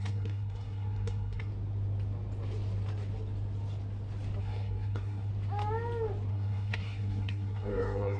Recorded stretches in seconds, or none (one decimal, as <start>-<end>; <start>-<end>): 1.5-4.4; 5.3-6.3